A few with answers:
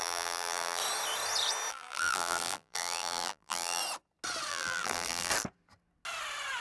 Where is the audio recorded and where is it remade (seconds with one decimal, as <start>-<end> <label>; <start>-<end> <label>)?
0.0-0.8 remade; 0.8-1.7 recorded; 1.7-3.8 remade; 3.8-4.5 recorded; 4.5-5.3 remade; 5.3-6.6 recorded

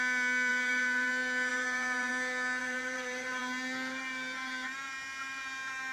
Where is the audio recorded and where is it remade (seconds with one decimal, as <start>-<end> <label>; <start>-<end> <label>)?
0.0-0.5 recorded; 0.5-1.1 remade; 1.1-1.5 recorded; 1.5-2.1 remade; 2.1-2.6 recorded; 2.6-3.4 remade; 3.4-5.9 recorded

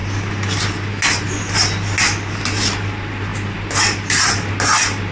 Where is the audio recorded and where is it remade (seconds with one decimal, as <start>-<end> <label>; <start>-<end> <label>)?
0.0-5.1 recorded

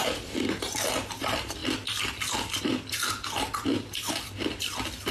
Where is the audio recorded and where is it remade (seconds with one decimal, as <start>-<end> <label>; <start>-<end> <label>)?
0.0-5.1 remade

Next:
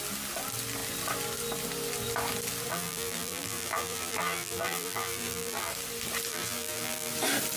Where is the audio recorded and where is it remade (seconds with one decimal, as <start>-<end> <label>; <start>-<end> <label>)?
0.0-2.7 recorded; 2.7-5.7 remade; 5.7-6.3 recorded; 6.3-7.1 remade; 7.1-7.6 recorded

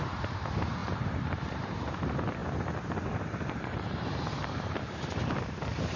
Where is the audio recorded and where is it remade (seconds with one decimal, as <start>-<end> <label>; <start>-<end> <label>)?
0.0-6.0 remade